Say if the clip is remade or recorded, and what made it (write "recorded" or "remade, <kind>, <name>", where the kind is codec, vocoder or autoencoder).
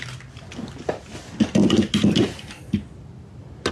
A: recorded